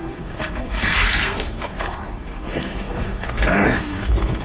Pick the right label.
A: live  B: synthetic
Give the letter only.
B